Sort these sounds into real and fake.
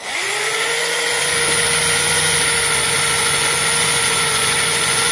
fake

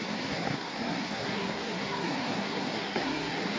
fake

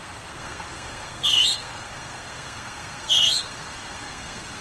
fake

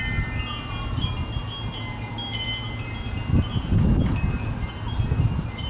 real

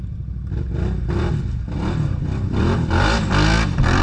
real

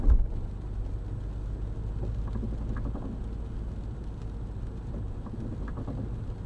real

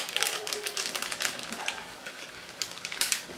fake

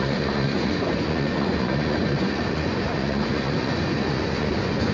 fake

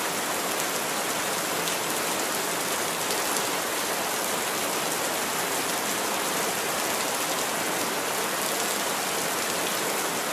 real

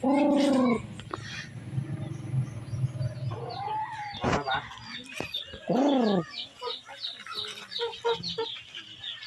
real